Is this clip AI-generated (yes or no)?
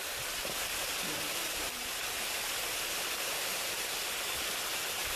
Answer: no